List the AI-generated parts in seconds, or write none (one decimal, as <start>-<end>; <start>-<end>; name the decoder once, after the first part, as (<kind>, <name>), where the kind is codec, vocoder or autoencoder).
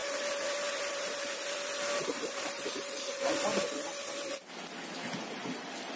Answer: none